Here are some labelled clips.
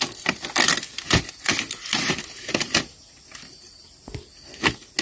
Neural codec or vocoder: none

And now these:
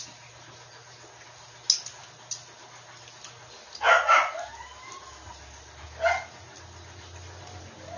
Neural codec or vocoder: none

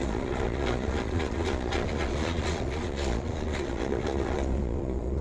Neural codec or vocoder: vocoder, Vocos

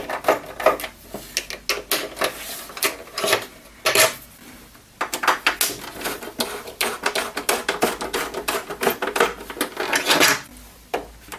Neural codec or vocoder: none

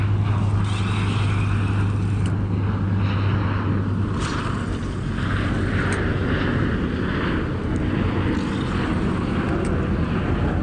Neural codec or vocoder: none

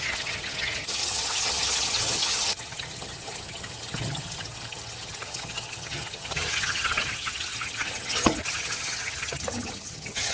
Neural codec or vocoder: vocoder, HiFi-GAN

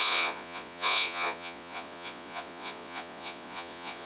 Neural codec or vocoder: vocoder, Vocos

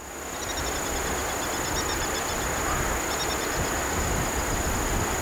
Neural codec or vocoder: none